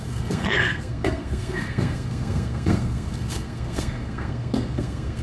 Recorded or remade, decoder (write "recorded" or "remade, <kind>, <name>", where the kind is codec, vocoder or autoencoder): remade, codec, SNAC